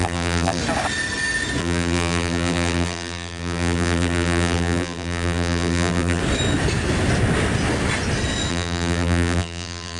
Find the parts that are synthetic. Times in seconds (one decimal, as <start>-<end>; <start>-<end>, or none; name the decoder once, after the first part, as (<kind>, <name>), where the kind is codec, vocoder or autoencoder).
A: 0.0-0.6 (vocoder, BigVGAN v2); 1.6-6.2; 8.5-10.0

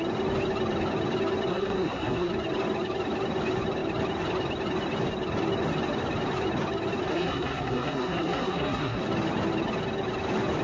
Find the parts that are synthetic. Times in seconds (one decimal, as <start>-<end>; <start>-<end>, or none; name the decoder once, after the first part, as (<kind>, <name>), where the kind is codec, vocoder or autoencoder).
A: 1.5-2.3 (codec, SNAC); 7.1-9.0

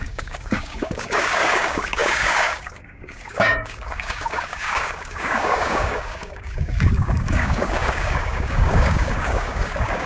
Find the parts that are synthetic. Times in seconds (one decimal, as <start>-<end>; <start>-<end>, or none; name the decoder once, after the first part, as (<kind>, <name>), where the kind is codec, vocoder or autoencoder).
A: 0.0-10.1 (codec, DAC)